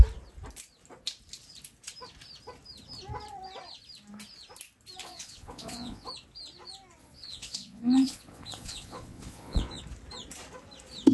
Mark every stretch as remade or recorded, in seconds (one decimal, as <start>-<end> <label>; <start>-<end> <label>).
0.0-5.0 recorded; 5.0-6.1 remade; 6.1-7.0 recorded; 7.0-9.8 remade; 9.8-11.1 recorded